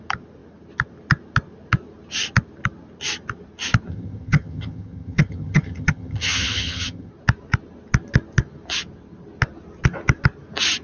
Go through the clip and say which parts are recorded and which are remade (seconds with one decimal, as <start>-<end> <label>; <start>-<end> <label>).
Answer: 0.0-3.9 recorded; 3.9-7.1 remade; 7.1-10.8 recorded